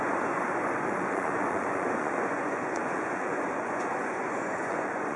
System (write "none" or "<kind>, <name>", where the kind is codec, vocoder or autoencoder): vocoder, Vocos